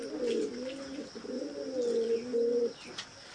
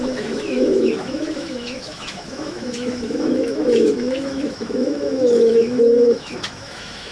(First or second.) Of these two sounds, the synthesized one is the second